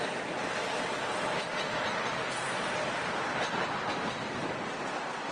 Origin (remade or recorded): recorded